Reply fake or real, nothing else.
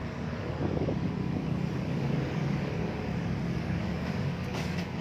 fake